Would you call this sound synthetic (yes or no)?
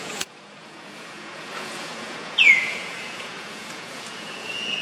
yes